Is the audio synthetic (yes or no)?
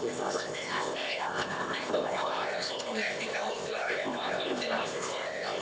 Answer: yes